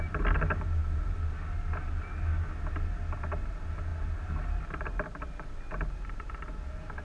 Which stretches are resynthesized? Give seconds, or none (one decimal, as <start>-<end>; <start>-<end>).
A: none